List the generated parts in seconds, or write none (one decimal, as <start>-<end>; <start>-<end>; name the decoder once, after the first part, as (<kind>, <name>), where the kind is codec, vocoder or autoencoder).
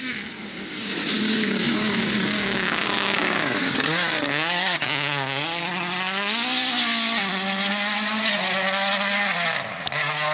0.4-5.6 (codec, DAC)